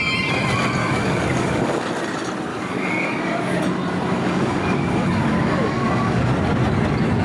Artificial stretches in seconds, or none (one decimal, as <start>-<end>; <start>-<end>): 0.8-1.9; 2.5-3.6; 4.1-6.3